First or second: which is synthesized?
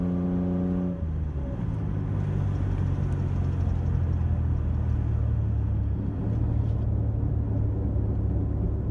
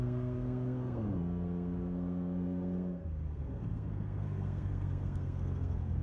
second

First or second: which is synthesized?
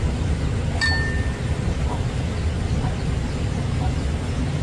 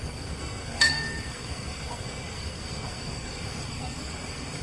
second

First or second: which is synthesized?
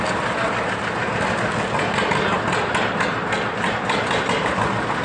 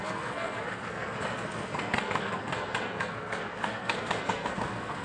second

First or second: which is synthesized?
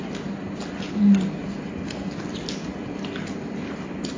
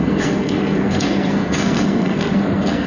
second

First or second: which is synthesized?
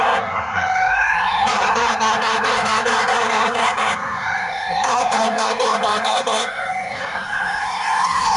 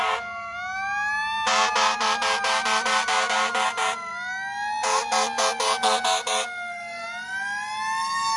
first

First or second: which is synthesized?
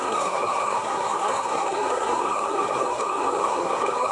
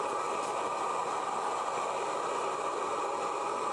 first